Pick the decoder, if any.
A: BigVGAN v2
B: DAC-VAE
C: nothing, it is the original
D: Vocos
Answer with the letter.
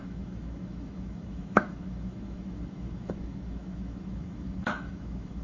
B